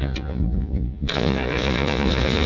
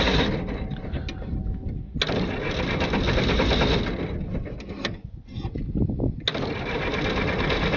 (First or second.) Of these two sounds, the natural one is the second